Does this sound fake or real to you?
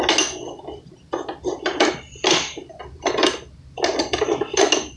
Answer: real